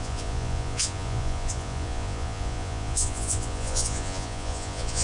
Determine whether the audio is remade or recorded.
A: remade